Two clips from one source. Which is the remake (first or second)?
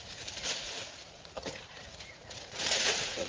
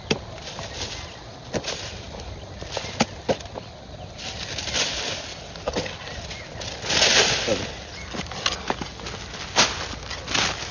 first